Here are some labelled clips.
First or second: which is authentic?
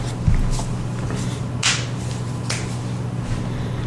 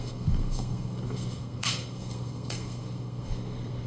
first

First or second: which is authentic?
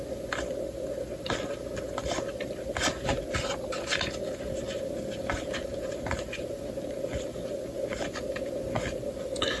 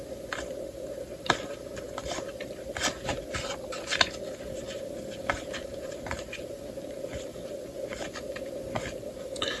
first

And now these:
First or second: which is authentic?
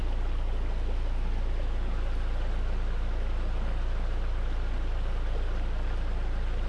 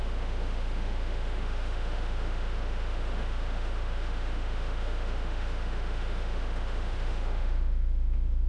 first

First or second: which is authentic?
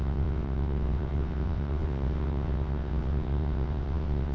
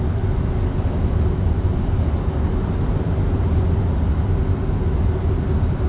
second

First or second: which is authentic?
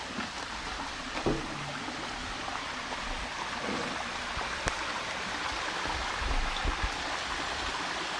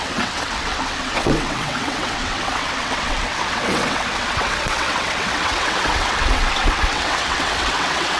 first